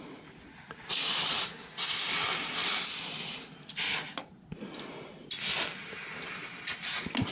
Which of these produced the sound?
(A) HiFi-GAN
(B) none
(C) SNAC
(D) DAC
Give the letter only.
B